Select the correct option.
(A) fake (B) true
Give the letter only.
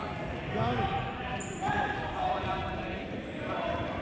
A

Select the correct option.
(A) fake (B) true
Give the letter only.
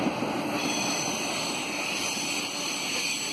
B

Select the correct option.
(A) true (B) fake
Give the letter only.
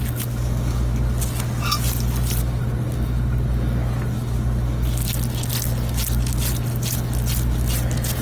A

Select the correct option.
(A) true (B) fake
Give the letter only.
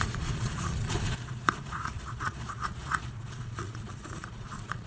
B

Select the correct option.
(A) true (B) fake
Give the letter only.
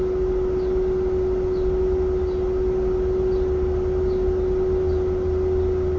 A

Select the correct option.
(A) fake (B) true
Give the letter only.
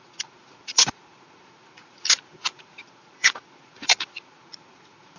A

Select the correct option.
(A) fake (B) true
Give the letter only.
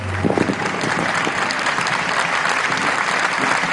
B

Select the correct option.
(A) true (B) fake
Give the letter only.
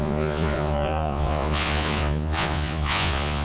B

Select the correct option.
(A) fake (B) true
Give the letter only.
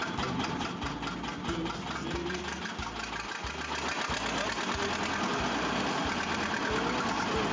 B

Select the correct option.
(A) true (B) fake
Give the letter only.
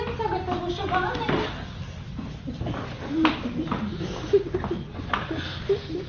A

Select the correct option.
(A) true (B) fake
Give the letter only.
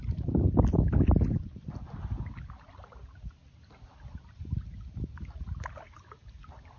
A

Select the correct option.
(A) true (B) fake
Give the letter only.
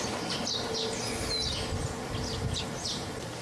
A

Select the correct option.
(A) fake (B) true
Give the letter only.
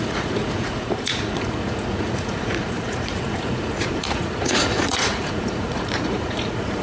A